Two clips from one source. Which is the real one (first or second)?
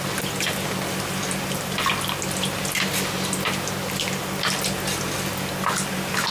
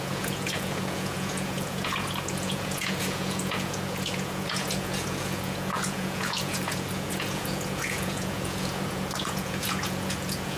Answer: first